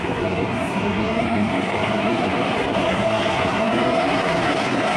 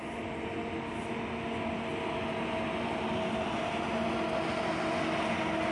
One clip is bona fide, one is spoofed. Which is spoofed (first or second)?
first